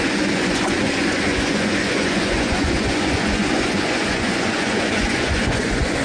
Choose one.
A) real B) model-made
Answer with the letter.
B